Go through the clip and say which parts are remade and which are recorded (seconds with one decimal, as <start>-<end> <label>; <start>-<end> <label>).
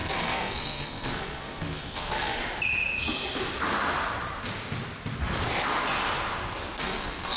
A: 0.0-2.4 remade; 2.4-6.8 recorded; 6.8-7.4 remade